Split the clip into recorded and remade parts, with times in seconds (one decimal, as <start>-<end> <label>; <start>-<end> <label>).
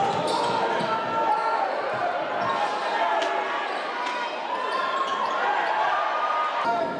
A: 0.0-7.0 recorded